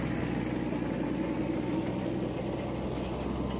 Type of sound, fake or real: real